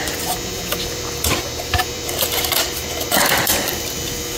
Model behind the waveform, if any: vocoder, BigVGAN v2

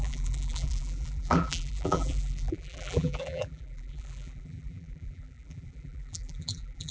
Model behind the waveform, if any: vocoder, BigVGAN v2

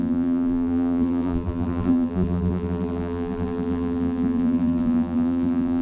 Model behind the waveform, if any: vocoder, BigVGAN v2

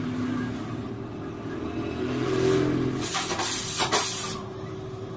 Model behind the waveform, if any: none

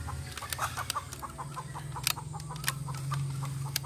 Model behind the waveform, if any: none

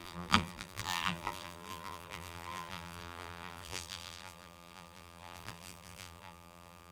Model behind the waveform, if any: vocoder, BigVGAN v2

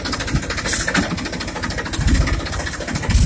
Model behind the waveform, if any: none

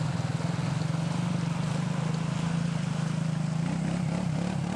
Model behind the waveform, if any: none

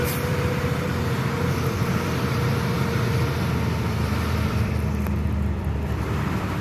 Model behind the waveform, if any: vocoder, BigVGAN v2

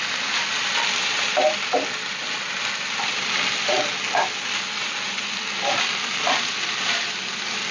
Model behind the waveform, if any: none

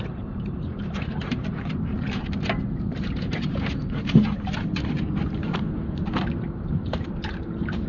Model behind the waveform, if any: vocoder, BigVGAN v2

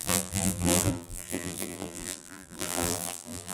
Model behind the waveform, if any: vocoder, BigVGAN v2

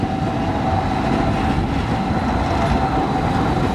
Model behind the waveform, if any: none